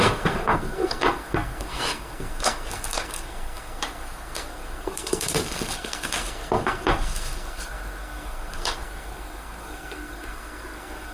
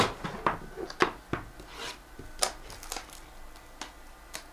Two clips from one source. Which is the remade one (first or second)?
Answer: first